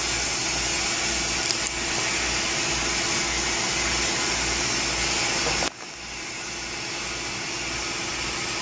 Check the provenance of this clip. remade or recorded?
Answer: recorded